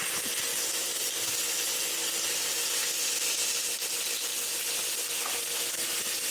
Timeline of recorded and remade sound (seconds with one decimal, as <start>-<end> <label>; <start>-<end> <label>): 0.0-6.3 recorded